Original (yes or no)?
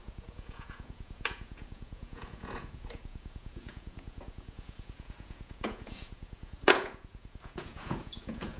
no